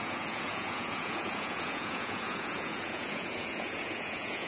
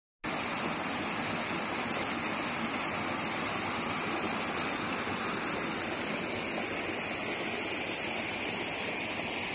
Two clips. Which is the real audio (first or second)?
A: second